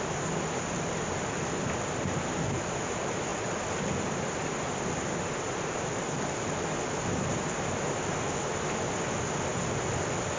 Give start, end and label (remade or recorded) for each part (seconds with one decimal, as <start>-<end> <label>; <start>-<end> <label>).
0.0-10.4 recorded